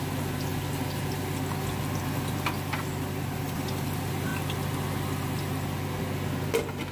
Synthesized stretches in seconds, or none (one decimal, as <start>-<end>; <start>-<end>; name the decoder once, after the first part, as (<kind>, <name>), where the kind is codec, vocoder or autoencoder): none